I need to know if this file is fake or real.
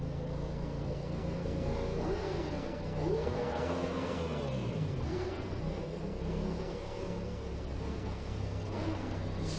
fake